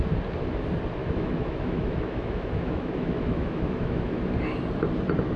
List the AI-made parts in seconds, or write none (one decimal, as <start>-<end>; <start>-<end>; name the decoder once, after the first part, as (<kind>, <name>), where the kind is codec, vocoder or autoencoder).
1.0-4.2 (autoencoder, DAC-VAE)